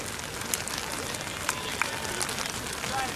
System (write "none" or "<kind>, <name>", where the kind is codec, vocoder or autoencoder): none